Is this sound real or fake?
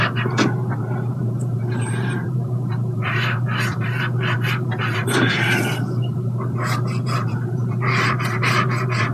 fake